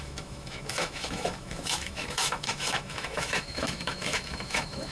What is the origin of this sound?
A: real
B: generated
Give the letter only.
B